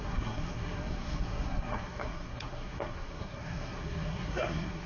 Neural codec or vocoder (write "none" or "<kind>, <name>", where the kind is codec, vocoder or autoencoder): codec, SNAC